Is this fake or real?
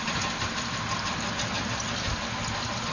real